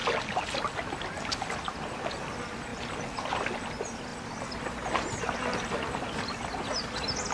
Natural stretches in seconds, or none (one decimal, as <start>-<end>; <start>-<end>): 0.0-7.3